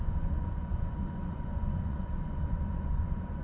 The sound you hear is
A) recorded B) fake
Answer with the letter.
B